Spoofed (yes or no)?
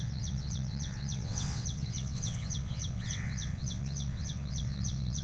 yes